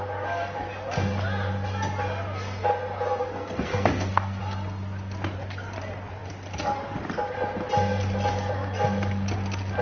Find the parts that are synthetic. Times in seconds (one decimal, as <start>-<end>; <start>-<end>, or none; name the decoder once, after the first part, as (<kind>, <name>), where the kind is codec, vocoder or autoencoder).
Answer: 3.2-4.4 (codec, SNAC)